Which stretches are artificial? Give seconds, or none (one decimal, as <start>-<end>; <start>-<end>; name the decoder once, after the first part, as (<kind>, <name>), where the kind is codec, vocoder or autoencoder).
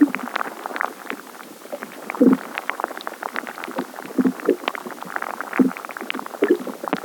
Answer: none